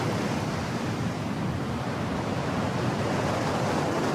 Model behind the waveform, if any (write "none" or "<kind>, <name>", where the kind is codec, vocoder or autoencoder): none